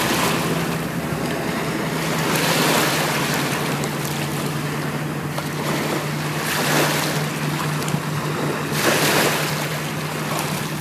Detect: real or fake real